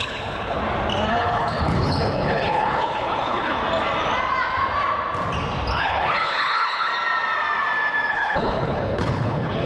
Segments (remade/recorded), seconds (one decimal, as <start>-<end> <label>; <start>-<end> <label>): 0.0-0.6 remade; 0.6-1.1 recorded; 1.1-3.6 remade; 3.6-5.8 recorded; 5.8-6.9 remade; 6.9-8.1 recorded; 8.1-9.7 remade

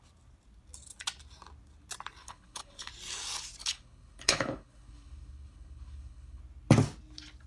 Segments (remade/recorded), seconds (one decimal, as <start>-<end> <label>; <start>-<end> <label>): 0.0-2.2 recorded; 2.2-2.9 remade; 2.9-3.6 recorded; 3.6-6.4 remade; 6.4-7.5 recorded

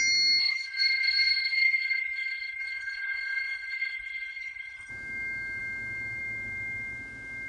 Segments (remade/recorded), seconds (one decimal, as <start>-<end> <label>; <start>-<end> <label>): 0.0-0.4 recorded; 0.4-4.9 remade; 4.9-7.5 recorded

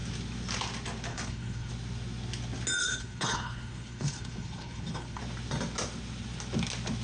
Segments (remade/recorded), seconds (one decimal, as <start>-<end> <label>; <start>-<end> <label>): 0.0-1.1 recorded; 1.1-1.7 remade; 1.7-2.8 recorded; 2.8-5.2 remade; 5.2-7.0 recorded

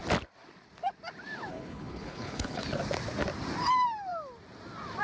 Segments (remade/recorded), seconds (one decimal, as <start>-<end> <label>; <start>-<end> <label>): 0.0-1.5 recorded; 1.5-2.6 remade; 2.6-5.0 recorded

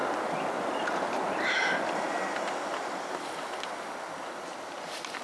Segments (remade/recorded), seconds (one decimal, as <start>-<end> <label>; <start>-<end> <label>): 0.0-5.2 recorded

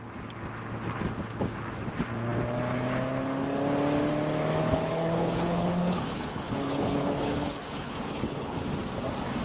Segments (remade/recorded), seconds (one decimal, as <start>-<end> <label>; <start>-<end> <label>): 0.0-4.6 recorded; 4.6-8.6 remade; 8.6-9.4 recorded

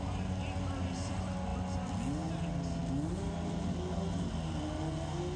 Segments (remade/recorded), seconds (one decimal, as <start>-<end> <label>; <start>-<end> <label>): 0.0-5.4 recorded